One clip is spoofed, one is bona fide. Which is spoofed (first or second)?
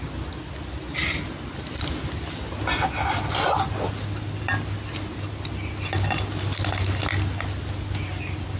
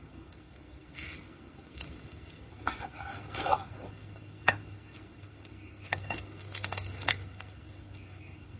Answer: second